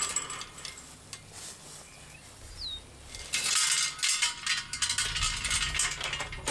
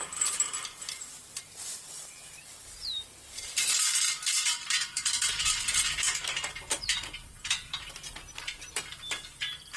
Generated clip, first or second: second